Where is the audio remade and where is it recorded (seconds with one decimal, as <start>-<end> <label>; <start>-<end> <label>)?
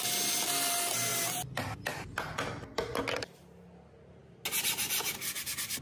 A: 0.0-5.8 recorded